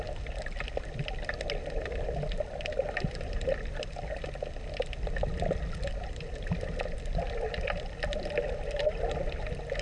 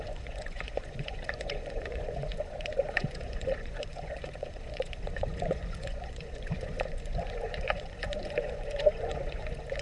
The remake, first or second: second